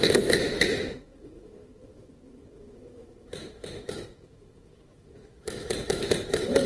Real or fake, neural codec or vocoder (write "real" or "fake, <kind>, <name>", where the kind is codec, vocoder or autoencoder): fake, autoencoder, DAC-VAE